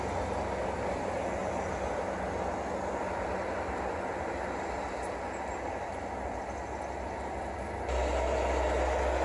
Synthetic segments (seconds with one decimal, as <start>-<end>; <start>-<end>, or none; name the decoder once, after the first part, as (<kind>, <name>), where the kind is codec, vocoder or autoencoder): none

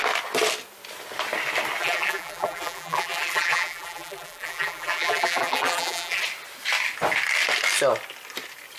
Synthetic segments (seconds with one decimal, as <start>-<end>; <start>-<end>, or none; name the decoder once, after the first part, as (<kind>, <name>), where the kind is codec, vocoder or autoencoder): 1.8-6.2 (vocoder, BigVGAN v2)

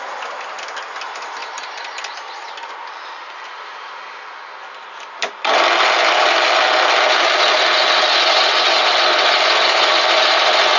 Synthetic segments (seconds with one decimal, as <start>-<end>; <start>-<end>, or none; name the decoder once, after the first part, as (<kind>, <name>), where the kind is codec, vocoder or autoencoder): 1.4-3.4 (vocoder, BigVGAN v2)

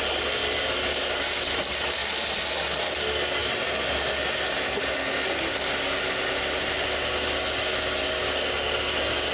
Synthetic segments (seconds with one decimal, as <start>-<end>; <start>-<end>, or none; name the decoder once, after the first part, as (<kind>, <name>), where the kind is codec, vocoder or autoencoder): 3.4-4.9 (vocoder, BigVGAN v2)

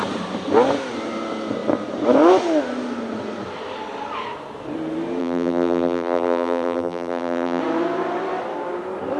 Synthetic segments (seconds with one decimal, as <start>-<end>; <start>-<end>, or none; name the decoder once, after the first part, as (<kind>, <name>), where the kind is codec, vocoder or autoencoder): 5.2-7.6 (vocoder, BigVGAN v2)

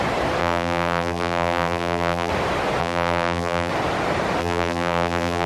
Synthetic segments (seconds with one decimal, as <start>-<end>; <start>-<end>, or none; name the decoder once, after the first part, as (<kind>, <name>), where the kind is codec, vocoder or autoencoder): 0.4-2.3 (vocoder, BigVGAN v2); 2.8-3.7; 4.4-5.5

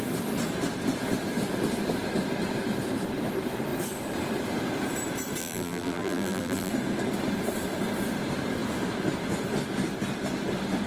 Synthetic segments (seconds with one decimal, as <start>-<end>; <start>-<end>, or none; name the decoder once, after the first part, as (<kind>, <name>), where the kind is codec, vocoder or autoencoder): 5.4-6.7 (vocoder, BigVGAN v2)